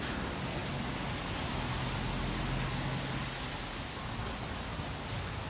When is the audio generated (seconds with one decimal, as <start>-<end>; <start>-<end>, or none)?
none